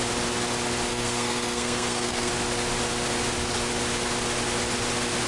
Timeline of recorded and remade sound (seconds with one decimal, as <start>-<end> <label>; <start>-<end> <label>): 0.0-0.9 recorded; 0.9-2.3 remade; 2.3-5.3 recorded